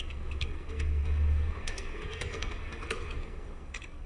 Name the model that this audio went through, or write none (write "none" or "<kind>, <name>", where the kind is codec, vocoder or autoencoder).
codec, SNAC